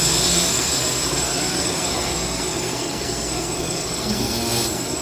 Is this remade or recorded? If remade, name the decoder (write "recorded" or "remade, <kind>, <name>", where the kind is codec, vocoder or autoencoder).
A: remade, codec, SNAC